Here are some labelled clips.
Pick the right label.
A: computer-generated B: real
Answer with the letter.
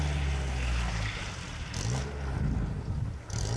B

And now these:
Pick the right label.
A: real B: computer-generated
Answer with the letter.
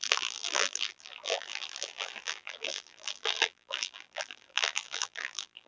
B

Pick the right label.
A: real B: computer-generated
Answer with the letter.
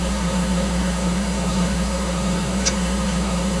B